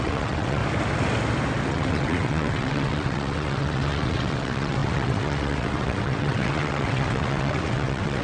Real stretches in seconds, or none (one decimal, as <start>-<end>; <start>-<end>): 0.6-1.7